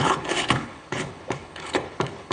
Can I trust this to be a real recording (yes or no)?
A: no